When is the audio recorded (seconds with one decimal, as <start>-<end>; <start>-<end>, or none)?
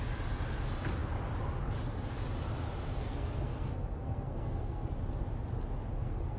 0.0-3.0; 4.9-5.9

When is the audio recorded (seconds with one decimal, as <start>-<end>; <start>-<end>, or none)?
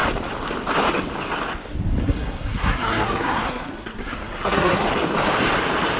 0.0-2.0; 4.8-6.0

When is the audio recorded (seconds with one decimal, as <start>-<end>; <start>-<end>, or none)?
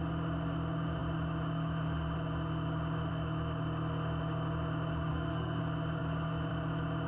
0.0-5.1; 5.6-7.1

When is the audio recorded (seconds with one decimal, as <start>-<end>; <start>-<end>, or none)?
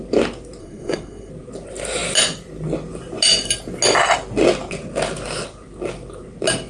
0.0-0.6; 1.3-6.7